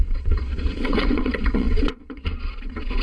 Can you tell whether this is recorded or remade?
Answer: remade